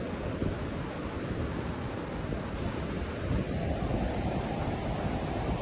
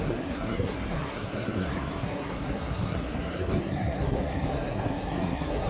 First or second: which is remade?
second